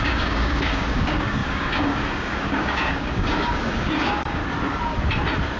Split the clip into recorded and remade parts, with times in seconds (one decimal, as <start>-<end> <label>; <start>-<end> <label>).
0.0-4.4 remade; 4.4-5.6 recorded